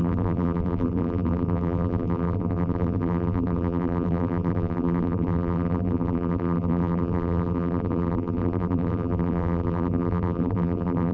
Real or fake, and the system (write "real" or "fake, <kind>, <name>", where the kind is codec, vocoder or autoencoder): fake, vocoder, BigVGAN v2